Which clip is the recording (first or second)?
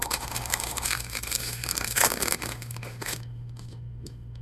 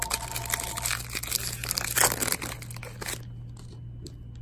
second